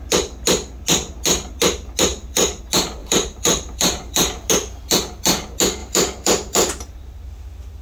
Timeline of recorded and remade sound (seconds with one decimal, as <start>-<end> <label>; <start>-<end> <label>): 0.0-2.1 recorded; 2.1-2.6 remade; 2.6-3.0 recorded; 3.0-4.5 remade; 4.5-5.8 recorded; 5.8-7.2 remade; 7.2-7.8 recorded

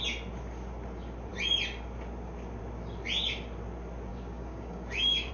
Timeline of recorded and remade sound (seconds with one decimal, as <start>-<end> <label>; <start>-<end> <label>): 0.0-4.1 recorded; 4.1-5.3 remade

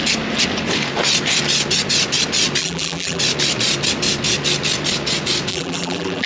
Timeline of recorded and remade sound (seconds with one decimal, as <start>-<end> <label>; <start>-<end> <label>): 0.0-2.6 recorded; 2.6-3.2 remade; 3.2-5.5 recorded; 5.5-6.3 remade

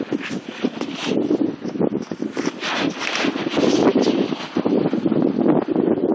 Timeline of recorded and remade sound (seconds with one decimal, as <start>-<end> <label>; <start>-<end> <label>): 0.0-6.1 recorded

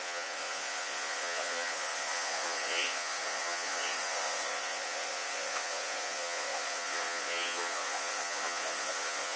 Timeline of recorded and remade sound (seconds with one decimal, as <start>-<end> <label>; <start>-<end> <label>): 0.0-9.4 remade

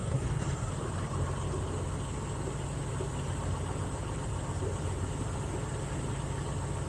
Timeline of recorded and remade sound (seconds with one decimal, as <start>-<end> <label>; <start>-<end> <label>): 0.0-0.7 remade; 0.7-6.9 recorded

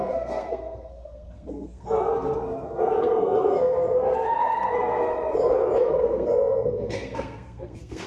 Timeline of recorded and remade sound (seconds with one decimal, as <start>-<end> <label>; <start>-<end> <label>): 0.0-5.1 remade; 5.1-5.8 recorded; 5.8-8.1 remade